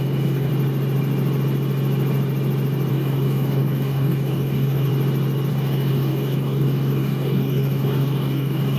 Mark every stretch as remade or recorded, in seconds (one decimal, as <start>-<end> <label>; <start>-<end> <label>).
0.0-0.5 remade; 0.5-2.9 recorded; 2.9-4.9 remade; 4.9-5.5 recorded; 5.5-8.8 remade